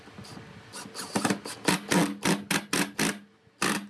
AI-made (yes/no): no